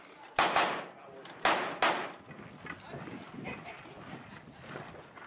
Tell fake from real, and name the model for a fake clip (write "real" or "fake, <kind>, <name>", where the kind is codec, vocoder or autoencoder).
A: real